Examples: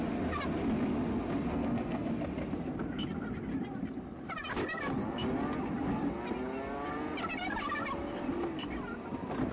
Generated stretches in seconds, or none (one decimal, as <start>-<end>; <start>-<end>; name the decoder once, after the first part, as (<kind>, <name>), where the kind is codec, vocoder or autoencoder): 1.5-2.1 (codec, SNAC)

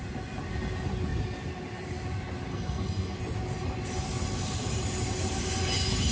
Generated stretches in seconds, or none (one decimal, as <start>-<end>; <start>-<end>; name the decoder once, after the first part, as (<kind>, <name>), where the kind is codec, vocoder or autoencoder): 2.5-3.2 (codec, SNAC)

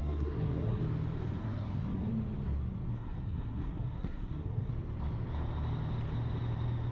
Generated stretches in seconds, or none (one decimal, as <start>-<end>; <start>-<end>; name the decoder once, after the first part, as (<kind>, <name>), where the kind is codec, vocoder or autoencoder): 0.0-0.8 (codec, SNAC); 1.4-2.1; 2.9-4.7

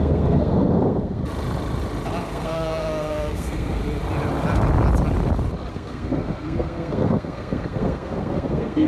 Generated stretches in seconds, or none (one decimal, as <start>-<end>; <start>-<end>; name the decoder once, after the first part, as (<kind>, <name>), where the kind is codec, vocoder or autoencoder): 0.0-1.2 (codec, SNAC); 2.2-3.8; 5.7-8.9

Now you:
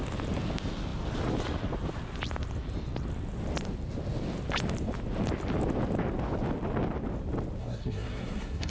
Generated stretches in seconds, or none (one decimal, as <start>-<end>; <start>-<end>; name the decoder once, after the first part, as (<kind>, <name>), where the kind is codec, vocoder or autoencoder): 7.6-8.7 (codec, SNAC)